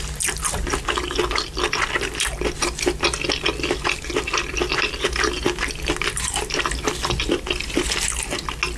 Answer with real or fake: real